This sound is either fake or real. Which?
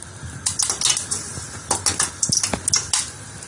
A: real